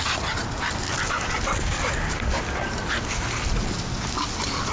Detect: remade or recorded recorded